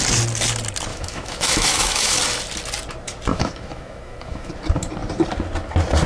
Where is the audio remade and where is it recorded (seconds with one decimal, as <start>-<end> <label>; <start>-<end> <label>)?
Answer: 0.0-0.9 recorded; 0.9-2.2 remade; 2.2-3.3 recorded; 3.3-4.5 remade; 4.5-6.1 recorded